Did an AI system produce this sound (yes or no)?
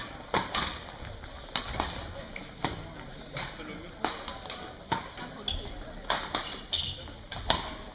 no